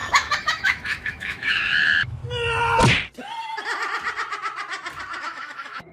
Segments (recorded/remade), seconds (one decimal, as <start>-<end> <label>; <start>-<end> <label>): 0.0-2.2 remade; 2.2-5.2 recorded; 5.2-5.9 remade